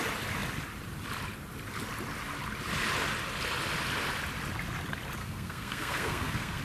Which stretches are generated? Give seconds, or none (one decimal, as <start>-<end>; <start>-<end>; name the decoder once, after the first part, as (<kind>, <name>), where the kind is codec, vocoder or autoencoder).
5.2-6.6 (codec, SNAC)